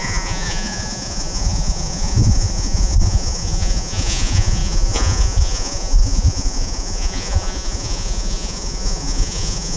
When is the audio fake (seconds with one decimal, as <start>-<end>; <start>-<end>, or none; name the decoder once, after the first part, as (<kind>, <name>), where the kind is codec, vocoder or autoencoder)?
0.0-9.8 (vocoder, Vocos)